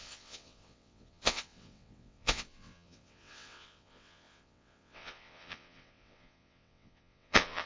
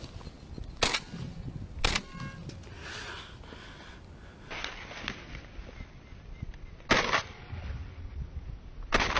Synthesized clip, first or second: first